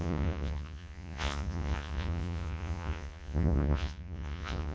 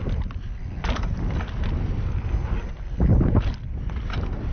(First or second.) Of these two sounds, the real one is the second